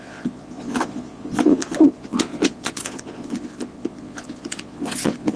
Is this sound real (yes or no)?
no